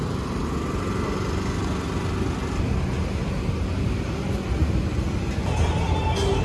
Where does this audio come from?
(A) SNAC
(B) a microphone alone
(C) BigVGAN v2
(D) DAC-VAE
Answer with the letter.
B